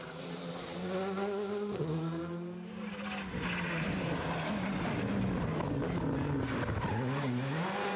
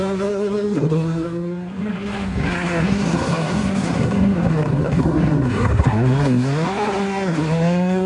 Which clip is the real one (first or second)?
first